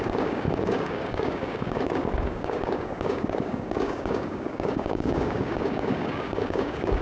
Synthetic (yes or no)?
yes